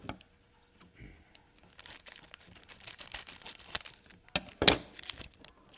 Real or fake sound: real